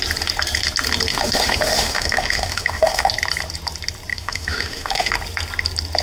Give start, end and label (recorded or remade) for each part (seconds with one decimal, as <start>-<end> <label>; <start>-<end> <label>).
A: 0.0-1.1 recorded; 1.1-3.1 remade; 3.1-4.1 recorded; 4.1-5.1 remade; 5.1-6.0 recorded